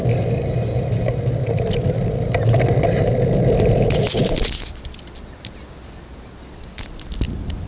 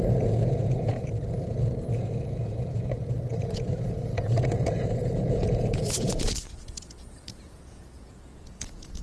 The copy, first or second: second